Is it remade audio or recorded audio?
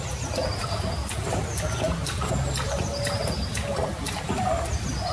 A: recorded